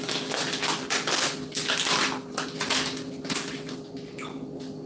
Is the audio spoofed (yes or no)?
no